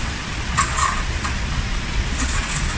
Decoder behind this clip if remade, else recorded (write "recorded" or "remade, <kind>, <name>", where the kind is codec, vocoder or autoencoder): remade, vocoder, Vocos